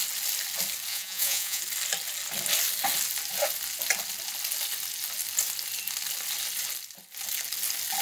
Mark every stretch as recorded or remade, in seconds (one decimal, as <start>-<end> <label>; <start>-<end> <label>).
0.0-0.9 recorded; 0.9-1.6 remade; 1.6-8.0 recorded